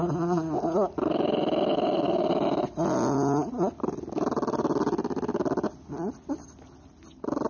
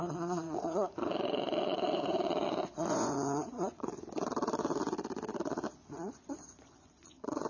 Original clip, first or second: first